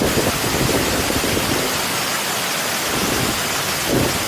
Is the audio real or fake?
real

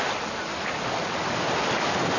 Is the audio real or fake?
real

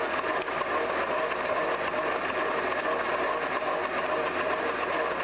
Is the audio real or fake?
real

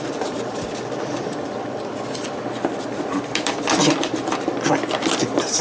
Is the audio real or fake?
fake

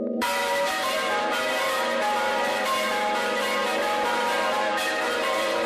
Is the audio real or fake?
fake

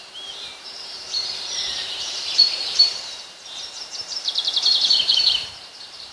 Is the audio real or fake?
fake